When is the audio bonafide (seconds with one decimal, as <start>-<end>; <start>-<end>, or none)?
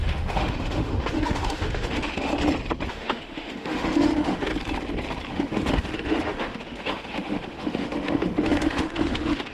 2.3-2.9; 4.5-5.3